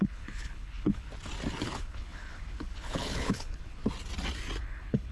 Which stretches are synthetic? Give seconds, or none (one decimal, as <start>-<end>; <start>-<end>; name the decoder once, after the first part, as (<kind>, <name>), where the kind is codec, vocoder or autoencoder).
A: 0.0-1.1 (codec, HILCodec); 1.6-3.8; 4.6-5.1